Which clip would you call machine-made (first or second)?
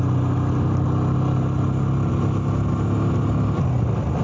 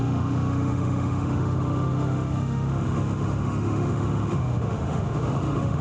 second